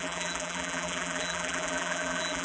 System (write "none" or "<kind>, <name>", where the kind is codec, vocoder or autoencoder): vocoder, BigVGAN v2